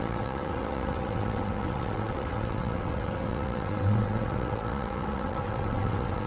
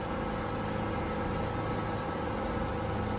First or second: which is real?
second